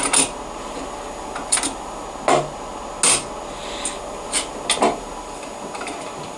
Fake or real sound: real